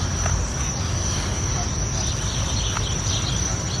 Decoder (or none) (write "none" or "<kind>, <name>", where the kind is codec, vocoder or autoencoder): none